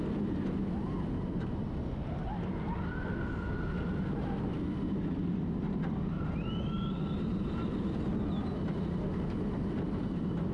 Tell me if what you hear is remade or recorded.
recorded